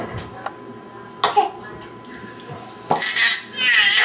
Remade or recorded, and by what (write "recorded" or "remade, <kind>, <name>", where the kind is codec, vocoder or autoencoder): recorded